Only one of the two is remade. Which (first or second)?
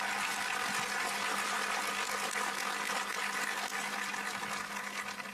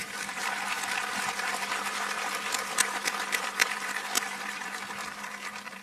second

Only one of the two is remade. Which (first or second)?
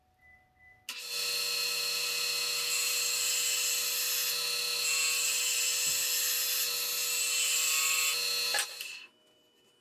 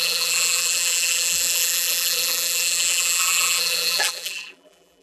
second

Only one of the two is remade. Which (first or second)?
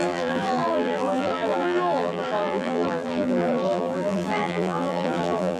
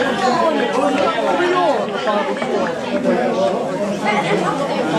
first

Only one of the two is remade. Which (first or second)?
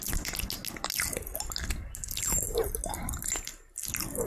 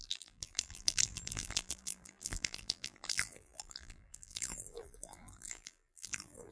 second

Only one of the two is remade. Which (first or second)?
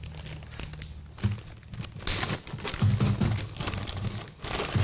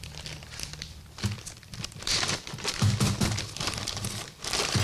second